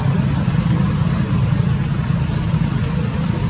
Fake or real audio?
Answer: real